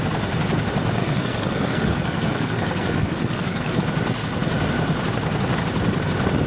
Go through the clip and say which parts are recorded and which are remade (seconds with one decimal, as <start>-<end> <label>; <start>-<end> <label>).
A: 0.0-1.0 recorded; 1.0-3.8 remade; 3.8-6.5 recorded